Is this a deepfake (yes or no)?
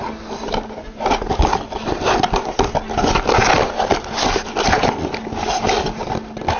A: no